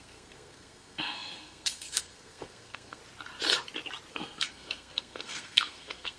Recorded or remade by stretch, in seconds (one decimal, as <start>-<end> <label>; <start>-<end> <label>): 0.0-3.0 remade; 3.0-4.1 recorded; 4.1-6.2 remade

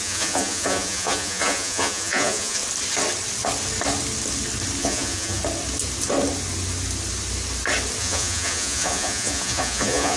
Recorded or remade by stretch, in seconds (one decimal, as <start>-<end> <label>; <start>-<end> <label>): 0.0-2.6 remade; 2.6-4.8 recorded; 4.8-5.4 remade; 5.4-8.0 recorded; 8.0-10.2 remade

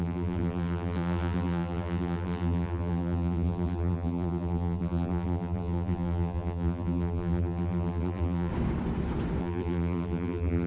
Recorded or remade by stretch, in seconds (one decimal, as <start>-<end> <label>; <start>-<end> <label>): 0.0-8.5 remade; 8.5-9.4 recorded; 9.4-10.7 remade

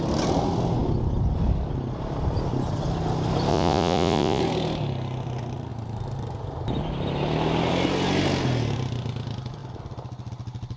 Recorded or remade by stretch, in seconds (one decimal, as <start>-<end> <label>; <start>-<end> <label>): 0.0-3.5 recorded; 3.5-4.4 remade; 4.4-10.8 recorded